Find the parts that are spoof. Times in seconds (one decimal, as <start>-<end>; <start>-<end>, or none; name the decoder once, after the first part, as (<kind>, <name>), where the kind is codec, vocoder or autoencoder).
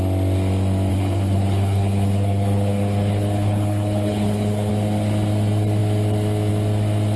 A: 0.9-4.7 (codec, HILCodec)